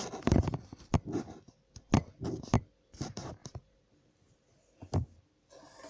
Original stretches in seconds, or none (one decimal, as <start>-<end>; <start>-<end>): 3.4-5.9